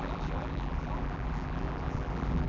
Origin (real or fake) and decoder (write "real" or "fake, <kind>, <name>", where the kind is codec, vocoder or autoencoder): fake, vocoder, BigVGAN v2